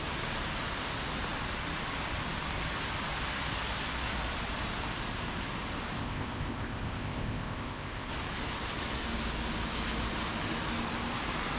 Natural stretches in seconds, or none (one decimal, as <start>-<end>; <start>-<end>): 0.0-6.0; 8.1-11.6